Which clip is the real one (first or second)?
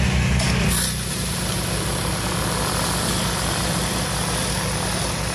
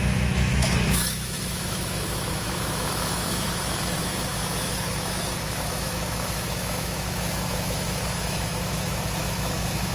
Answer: first